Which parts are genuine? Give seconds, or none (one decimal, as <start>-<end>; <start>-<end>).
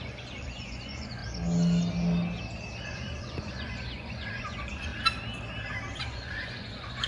1.2-2.8; 4.9-6.0